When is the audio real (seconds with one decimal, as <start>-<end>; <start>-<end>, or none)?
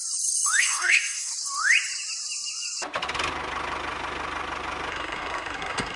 0.0-0.6; 1.3-4.9